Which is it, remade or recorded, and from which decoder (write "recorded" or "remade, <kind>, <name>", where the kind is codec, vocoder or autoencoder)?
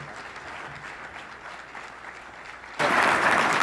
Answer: recorded